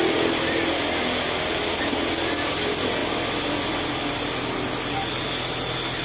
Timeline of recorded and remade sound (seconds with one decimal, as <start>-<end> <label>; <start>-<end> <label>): 0.0-6.0 recorded